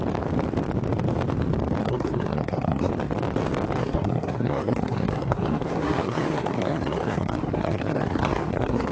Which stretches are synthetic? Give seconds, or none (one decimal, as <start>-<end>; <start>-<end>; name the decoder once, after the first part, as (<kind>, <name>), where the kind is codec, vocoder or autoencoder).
1.8-2.9 (codec, SNAC); 3.8-8.9